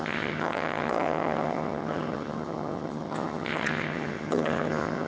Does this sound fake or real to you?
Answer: fake